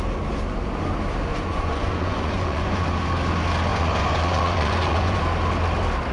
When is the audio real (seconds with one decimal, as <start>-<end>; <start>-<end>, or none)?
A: 0.0-1.3; 2.9-3.7; 5.2-6.1